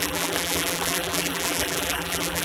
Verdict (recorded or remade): remade